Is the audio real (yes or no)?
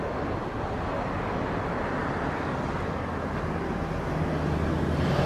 yes